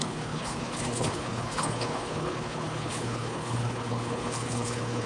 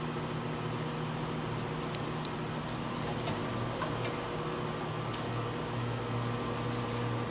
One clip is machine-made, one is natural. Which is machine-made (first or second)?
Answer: first